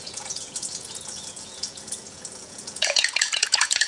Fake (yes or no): yes